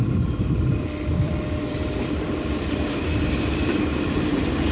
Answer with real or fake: real